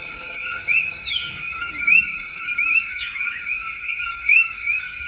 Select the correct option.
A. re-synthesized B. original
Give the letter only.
A